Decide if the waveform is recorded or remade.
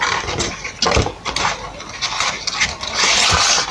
recorded